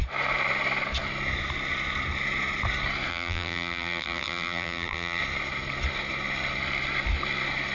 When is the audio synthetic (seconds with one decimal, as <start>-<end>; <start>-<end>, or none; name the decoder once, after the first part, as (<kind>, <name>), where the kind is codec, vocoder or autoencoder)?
3.1-5.2 (vocoder, BigVGAN v2)